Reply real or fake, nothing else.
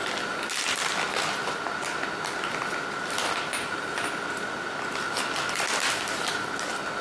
real